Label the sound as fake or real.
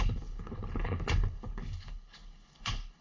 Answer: fake